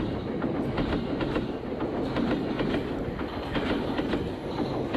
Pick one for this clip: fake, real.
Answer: real